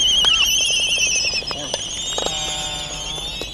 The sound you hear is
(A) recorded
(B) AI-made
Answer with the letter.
A